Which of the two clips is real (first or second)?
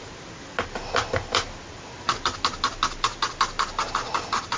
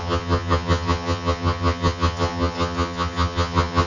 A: first